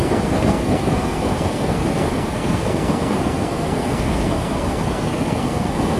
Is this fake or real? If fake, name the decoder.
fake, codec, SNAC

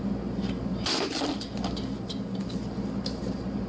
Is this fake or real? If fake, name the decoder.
real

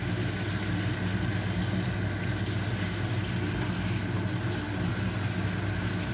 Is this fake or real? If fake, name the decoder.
real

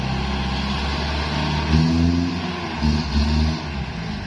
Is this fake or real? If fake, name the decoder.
real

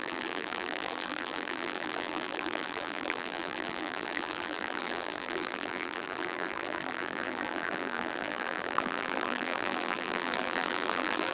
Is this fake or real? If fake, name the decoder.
fake, vocoder, BigVGAN v2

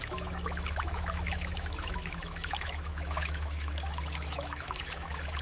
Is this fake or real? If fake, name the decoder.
fake, autoencoder, DAC-VAE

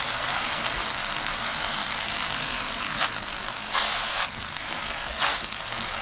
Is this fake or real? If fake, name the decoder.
fake, codec, SNAC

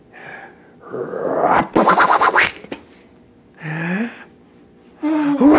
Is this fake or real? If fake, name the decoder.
real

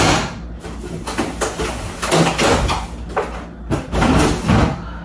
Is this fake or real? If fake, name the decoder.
real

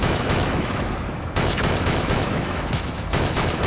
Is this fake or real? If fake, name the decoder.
fake, autoencoder, DAC-VAE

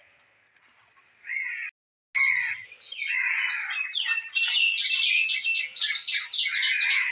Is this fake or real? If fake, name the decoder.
real